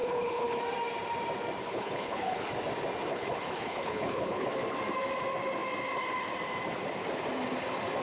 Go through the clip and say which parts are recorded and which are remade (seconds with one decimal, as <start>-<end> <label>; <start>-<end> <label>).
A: 0.0-0.6 remade; 0.6-1.6 recorded; 1.6-2.5 remade; 2.5-3.1 recorded; 3.1-4.5 remade; 4.5-8.0 recorded